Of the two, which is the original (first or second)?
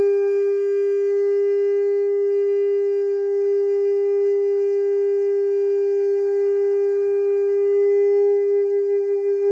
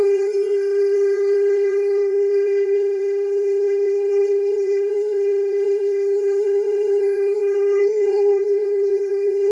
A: first